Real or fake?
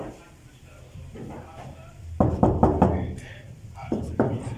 fake